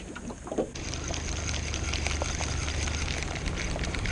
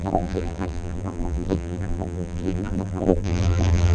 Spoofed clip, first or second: second